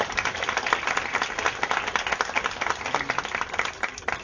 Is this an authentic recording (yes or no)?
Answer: yes